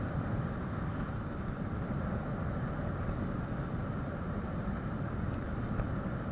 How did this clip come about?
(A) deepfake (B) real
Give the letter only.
B